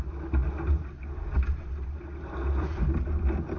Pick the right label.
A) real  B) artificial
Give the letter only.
A